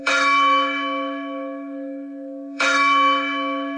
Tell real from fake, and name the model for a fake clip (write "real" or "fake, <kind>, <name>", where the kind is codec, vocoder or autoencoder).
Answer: fake, autoencoder, DAC-VAE